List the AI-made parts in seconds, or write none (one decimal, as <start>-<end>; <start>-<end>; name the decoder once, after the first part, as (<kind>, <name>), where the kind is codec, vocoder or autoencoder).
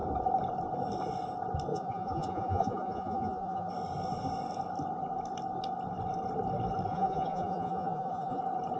1.7-3.7 (vocoder, Vocos); 6.9-8.4